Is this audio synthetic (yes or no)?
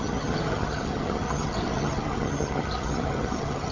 yes